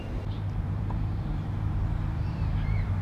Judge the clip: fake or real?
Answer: fake